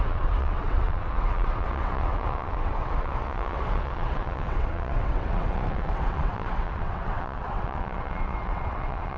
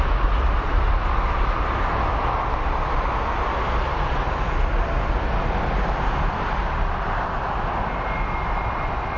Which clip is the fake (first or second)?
first